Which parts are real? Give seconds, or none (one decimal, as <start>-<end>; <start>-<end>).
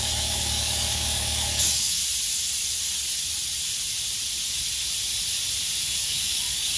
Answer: 2.0-5.8